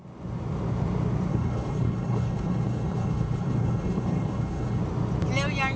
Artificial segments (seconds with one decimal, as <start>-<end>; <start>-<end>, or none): 1.3-4.8

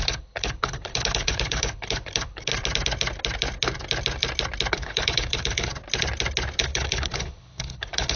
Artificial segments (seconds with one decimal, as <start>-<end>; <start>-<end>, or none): 0.0-2.5; 4.7-5.7; 6.6-8.2

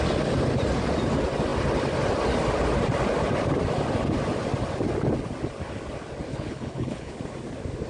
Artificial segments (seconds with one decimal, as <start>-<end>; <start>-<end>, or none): 6.3-7.1

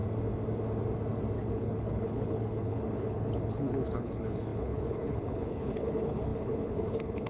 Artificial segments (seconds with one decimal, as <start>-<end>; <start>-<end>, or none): 1.4-7.3